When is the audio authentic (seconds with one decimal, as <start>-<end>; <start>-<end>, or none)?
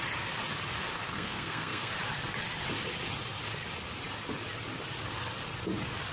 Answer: 0.0-1.0; 1.9-6.1